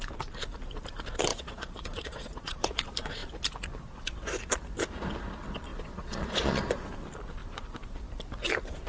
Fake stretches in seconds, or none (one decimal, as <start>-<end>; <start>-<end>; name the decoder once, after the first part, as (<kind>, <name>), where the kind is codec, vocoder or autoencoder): 1.3-2.7 (vocoder, Vocos); 5.7-6.6